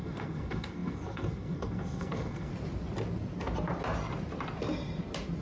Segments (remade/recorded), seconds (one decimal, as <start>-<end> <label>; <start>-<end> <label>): 0.0-2.5 remade; 2.5-5.4 recorded